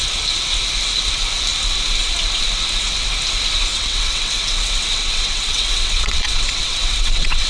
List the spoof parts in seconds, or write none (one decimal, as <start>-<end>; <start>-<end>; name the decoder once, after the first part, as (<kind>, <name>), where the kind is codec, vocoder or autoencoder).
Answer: 3.7-7.5 (vocoder, WaveNeXt)